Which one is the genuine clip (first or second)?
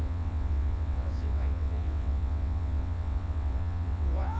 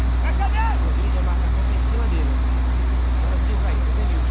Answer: second